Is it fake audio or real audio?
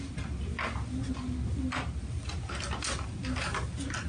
real